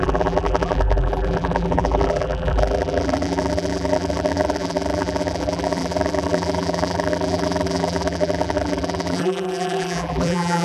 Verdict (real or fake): fake